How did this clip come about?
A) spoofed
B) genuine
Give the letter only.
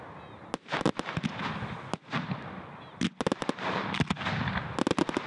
B